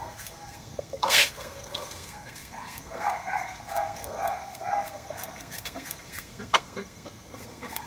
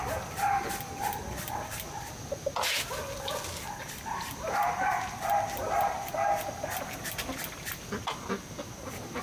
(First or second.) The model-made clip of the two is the first